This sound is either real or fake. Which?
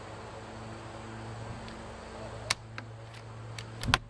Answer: real